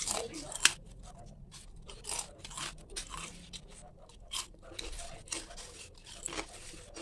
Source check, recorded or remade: remade